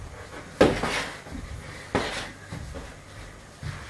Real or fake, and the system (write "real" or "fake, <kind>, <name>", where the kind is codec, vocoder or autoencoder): real